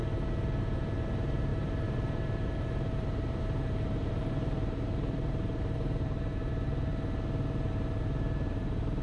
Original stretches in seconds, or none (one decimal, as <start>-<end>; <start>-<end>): 0.0-0.6; 6.9-8.0